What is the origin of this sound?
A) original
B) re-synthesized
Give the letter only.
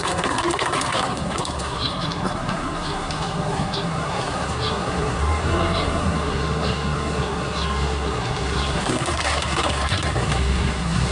B